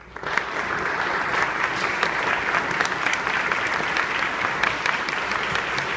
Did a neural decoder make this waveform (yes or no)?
no